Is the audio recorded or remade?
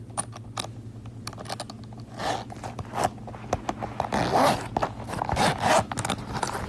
recorded